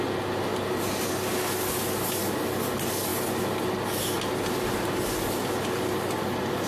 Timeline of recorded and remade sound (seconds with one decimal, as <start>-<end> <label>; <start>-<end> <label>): 0.0-6.7 recorded